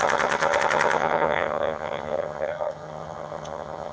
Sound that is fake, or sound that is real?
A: fake